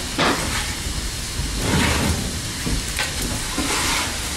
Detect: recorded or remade recorded